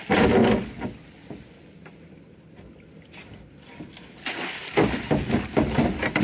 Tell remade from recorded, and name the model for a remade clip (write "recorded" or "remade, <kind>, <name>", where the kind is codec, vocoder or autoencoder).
recorded